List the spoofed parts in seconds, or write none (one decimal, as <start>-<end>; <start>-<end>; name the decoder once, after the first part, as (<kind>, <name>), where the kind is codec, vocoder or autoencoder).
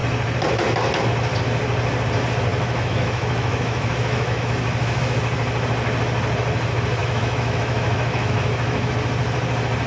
2.5-5.0 (autoencoder, DAC-VAE); 7.0-8.9